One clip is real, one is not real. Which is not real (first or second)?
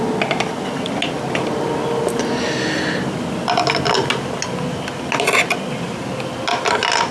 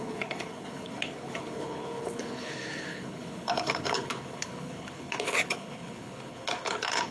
second